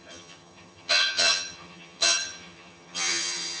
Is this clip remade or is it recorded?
remade